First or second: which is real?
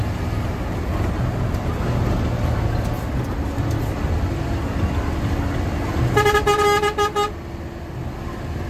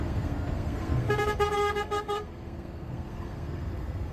first